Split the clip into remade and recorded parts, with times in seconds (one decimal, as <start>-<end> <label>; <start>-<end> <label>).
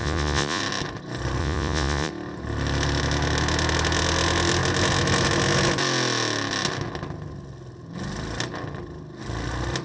0.0-0.6 remade; 0.6-1.4 recorded; 1.4-2.1 remade; 2.1-9.8 recorded